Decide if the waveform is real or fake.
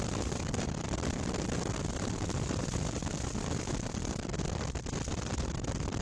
fake